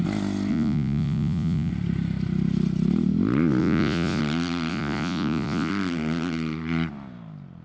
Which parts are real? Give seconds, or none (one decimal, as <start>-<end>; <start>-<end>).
0.0-0.5; 1.7-3.6; 4.2-4.7; 5.7-7.6